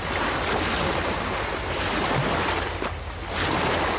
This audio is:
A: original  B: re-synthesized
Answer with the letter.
A